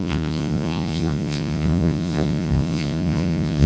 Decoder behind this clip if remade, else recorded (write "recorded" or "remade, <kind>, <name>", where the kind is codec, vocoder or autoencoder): remade, vocoder, Vocos